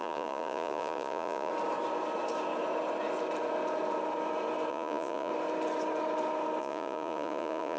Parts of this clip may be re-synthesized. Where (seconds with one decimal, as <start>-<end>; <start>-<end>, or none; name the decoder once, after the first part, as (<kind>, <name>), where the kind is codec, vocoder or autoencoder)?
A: 0.0-1.5 (vocoder, Vocos); 4.7-5.3; 6.6-7.8

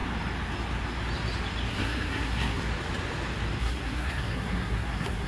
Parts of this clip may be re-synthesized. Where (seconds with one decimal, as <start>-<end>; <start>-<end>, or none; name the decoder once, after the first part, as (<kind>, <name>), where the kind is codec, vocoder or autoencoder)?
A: 1.7-2.6 (codec, SNAC); 3.6-5.3

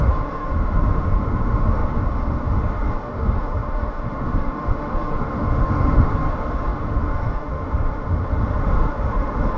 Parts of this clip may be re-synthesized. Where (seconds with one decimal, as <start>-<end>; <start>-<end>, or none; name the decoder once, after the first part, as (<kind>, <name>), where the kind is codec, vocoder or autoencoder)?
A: 0.0-9.6 (autoencoder, DAC-VAE)

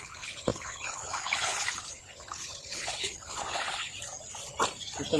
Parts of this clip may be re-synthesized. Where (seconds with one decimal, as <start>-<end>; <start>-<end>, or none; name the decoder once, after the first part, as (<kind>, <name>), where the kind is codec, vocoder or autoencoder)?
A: 0.0-3.9 (codec, HILCodec)

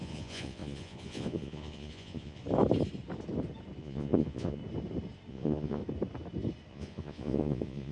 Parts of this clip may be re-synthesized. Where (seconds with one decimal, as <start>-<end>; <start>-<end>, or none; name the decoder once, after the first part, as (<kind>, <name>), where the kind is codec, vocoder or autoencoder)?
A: 0.0-2.4 (vocoder, Vocos); 3.8-4.6; 5.3-5.8; 6.7-7.9

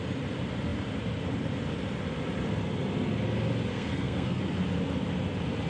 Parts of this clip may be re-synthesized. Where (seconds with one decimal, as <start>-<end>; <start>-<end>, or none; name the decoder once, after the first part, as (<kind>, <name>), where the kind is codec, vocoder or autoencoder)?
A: 3.7-4.4 (codec, SNAC)

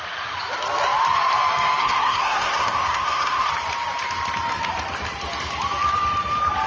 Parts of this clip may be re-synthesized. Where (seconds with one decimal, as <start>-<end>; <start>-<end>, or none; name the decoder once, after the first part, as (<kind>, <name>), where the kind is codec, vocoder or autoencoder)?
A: 1.8-3.5 (codec, SNAC)